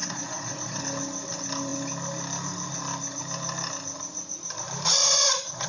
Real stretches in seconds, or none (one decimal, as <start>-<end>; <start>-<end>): 0.8-5.0